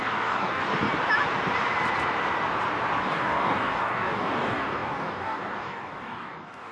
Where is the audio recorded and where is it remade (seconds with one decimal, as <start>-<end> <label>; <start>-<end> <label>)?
0.0-0.6 remade; 0.6-3.0 recorded; 3.0-6.7 remade